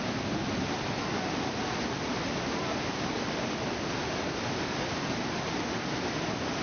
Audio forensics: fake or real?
real